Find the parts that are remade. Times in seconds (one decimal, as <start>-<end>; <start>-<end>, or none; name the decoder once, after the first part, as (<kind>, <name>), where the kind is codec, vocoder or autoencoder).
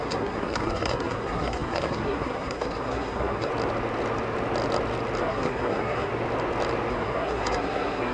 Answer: 0.0-3.5 (codec, SNAC); 5.2-6.1; 6.9-8.1